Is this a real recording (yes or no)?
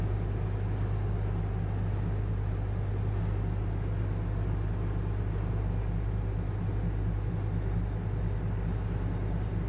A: yes